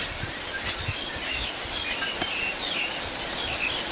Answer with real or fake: real